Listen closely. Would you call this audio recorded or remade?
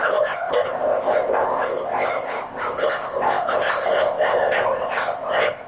remade